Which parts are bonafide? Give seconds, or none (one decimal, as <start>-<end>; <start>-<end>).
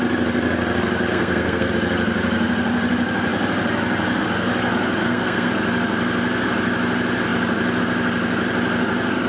0.0-1.1; 1.7-5.0; 5.5-9.3